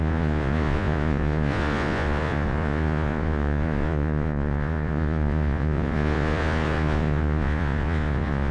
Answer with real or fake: fake